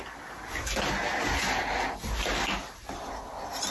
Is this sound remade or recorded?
recorded